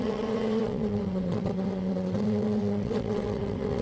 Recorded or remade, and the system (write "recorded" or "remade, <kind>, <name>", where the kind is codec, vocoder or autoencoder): remade, vocoder, WaveNeXt